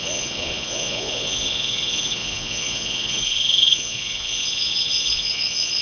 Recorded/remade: remade